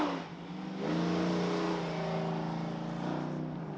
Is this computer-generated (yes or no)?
no